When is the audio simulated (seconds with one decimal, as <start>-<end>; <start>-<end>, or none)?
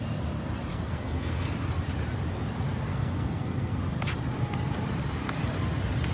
0.7-1.5; 2.9-3.8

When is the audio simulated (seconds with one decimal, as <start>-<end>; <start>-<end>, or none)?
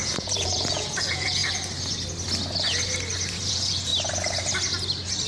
0.0-1.4; 3.5-3.9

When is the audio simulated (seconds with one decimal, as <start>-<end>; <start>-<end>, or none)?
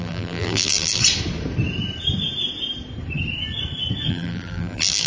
0.0-1.0; 4.1-5.1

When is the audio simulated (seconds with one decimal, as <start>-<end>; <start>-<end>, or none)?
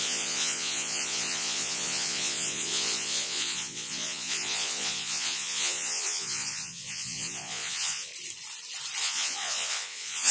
0.0-8.1; 9.0-10.3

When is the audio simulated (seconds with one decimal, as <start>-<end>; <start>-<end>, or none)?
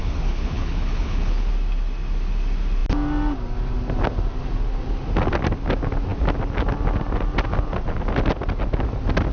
0.0-1.5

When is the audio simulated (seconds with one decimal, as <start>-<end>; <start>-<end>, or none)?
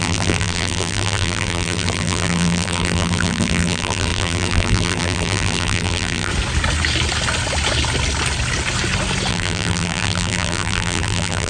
0.0-6.3; 9.3-11.5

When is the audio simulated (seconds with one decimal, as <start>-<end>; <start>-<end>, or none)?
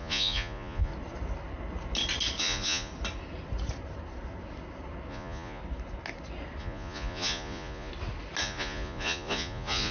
0.0-0.9; 2.4-2.9; 5.1-5.6; 6.6-7.9; 8.4-9.9